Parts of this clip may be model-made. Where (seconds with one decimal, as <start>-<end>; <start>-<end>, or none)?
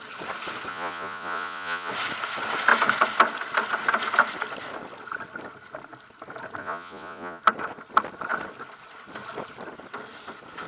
0.7-1.9; 6.6-7.4